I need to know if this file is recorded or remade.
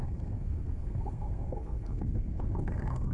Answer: remade